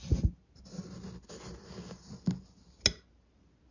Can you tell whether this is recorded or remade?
recorded